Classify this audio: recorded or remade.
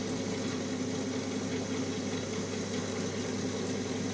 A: recorded